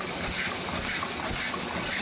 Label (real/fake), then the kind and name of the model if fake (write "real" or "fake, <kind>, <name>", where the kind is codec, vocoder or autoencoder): real